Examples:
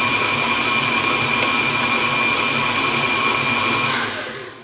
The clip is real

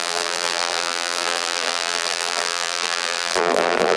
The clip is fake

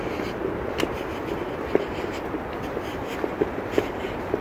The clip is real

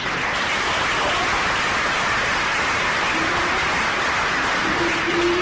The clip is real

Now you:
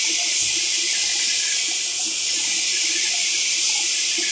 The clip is real